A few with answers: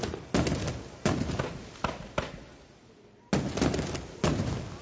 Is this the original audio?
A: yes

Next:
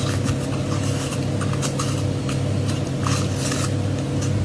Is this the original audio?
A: yes